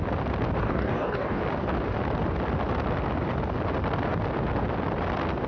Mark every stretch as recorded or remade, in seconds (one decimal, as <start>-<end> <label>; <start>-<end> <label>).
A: 0.0-0.6 recorded; 0.6-1.4 remade; 1.4-5.5 recorded